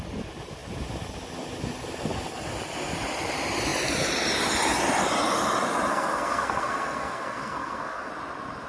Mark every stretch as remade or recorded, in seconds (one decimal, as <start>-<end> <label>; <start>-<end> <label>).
0.0-5.9 recorded; 5.9-8.1 remade; 8.1-8.7 recorded